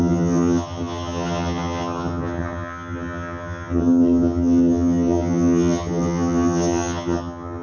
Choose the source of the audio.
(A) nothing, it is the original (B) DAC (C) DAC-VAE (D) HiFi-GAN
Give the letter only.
D